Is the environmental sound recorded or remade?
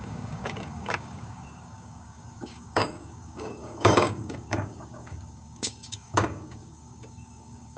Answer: remade